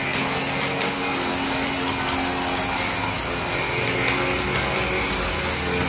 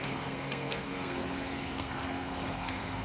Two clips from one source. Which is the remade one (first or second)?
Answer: second